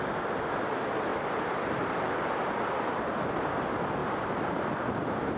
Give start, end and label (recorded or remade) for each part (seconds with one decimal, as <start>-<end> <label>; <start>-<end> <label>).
0.0-5.4 recorded